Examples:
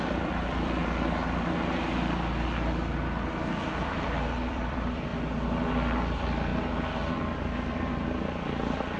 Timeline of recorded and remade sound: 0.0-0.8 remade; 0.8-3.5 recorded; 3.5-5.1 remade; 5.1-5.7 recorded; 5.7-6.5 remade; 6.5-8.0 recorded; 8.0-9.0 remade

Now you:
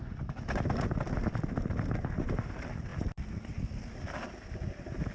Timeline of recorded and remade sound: 0.0-5.1 recorded

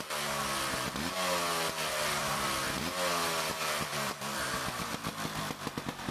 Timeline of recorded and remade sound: 0.0-2.2 recorded; 2.2-2.8 remade; 2.8-3.9 recorded; 3.9-4.9 remade; 4.9-6.1 recorded

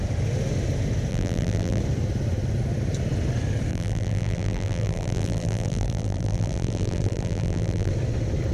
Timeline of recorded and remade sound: 0.0-1.1 recorded; 1.1-1.8 remade; 1.8-3.7 recorded; 3.7-7.9 remade; 7.9-8.5 recorded

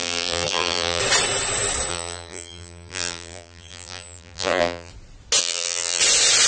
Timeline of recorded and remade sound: 0.0-1.0 remade; 1.0-1.9 recorded; 1.9-4.9 remade; 4.9-5.4 recorded; 5.4-6.0 remade; 6.0-6.5 recorded